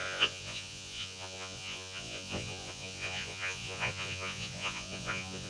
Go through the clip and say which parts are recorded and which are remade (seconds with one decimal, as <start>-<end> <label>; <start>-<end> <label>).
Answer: 0.0-5.5 remade